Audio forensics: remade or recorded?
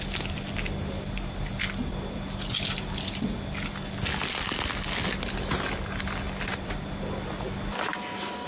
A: recorded